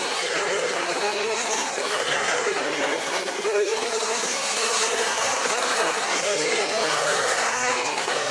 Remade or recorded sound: remade